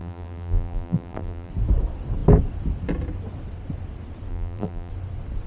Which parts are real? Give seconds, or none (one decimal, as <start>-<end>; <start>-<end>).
1.5-4.3; 4.9-5.5